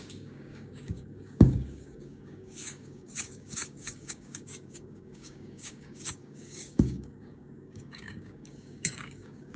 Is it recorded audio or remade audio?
remade